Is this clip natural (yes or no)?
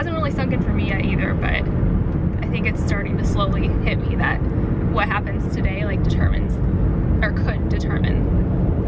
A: yes